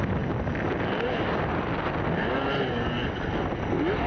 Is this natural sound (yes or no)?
yes